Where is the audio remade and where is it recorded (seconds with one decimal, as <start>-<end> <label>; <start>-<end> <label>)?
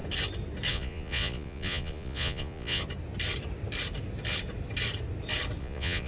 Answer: 0.0-0.7 recorded; 0.7-2.8 remade; 2.8-5.6 recorded; 5.6-6.1 remade